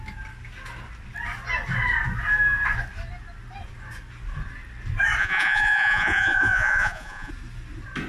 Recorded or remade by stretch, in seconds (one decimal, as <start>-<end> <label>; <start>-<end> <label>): 0.0-5.2 recorded; 5.2-7.3 remade; 7.3-8.1 recorded